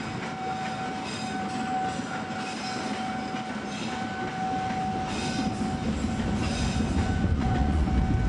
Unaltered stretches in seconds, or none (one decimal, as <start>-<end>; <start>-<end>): 0.0-7.0; 7.9-8.3